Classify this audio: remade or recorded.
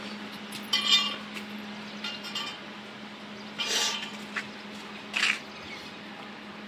recorded